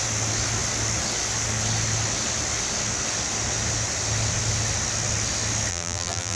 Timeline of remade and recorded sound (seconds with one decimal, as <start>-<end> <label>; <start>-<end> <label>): 0.0-5.7 recorded; 5.7-6.4 remade